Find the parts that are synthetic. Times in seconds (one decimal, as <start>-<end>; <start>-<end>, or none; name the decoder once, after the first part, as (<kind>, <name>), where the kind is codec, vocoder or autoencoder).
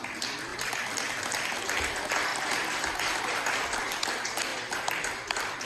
0.5-1.6 (vocoder, BigVGAN v2); 2.3-3.5; 4.5-5.7